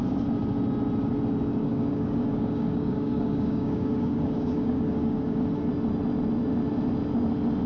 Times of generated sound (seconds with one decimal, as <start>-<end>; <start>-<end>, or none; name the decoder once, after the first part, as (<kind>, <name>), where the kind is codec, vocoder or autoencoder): 1.6-5.4 (codec, DAC)